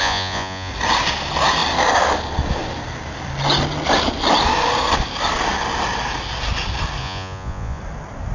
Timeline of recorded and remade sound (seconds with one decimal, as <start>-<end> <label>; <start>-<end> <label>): 0.0-0.7 remade; 0.7-7.0 recorded; 7.0-7.8 remade; 7.8-8.3 recorded